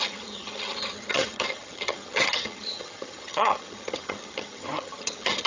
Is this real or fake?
fake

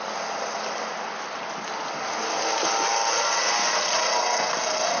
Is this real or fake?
real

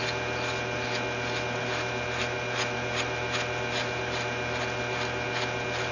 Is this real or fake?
real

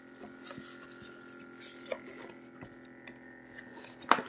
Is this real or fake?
real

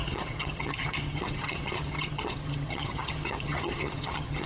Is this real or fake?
fake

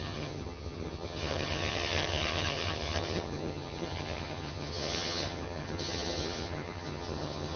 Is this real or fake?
fake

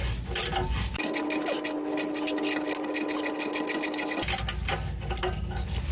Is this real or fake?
real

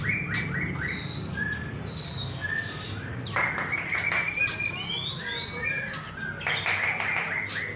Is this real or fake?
real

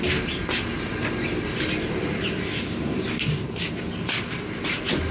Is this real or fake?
real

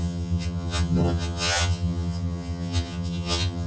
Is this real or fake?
fake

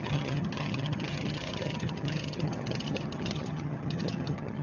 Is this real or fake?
fake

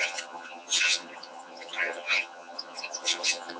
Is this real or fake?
fake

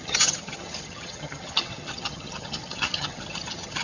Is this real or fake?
fake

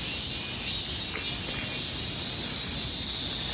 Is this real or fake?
real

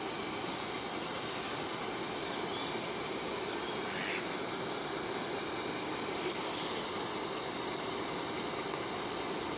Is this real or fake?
real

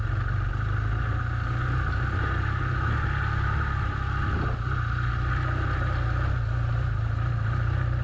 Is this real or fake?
real